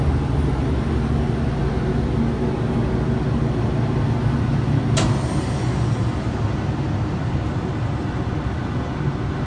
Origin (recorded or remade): recorded